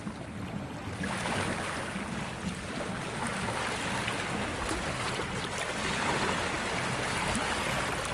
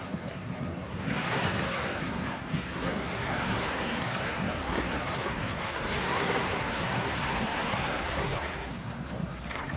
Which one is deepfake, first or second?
second